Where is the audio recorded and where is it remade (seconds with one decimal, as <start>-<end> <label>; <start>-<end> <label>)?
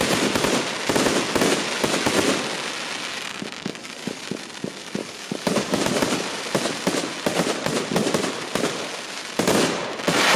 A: 0.0-3.1 recorded; 3.1-4.2 remade; 4.2-5.0 recorded; 5.0-5.8 remade; 5.8-10.4 recorded